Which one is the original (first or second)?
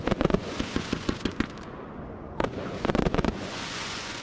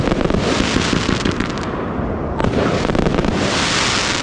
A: second